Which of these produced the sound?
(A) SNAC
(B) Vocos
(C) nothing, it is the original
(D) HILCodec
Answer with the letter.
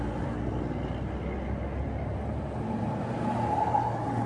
C